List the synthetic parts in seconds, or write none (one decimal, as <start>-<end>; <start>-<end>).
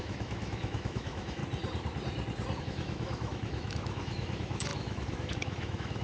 0.0-1.4; 2.6-6.0